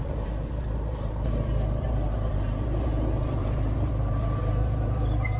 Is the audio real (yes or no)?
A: no